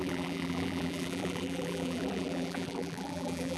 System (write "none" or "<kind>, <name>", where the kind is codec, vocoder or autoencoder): vocoder, BigVGAN v2